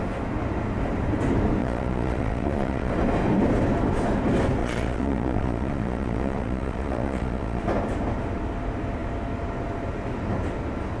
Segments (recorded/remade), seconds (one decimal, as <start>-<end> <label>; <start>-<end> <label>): 0.0-1.6 recorded; 1.6-2.9 remade; 2.9-4.6 recorded; 4.6-7.6 remade; 7.6-11.0 recorded